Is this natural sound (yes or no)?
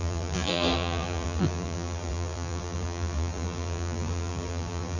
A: no